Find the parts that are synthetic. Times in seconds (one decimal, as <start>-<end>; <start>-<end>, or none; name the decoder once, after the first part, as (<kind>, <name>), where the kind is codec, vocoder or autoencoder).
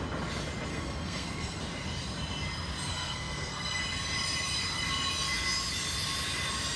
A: 0.7-1.6 (codec, SNAC); 2.9-3.8